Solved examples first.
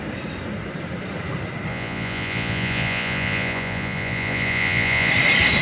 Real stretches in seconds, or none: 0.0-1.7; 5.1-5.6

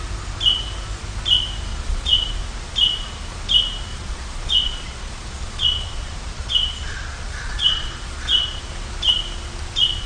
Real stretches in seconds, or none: 0.0-1.7; 2.3-3.9; 8.6-10.1

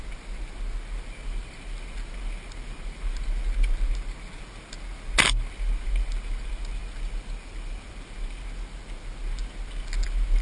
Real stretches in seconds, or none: 0.0-10.4

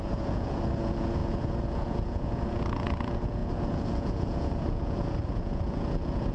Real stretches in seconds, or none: none

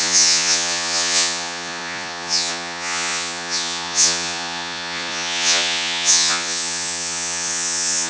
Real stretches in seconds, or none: none